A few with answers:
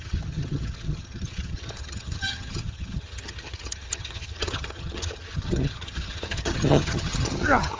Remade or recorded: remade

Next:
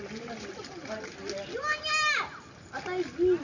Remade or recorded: recorded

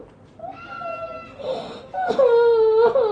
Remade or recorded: recorded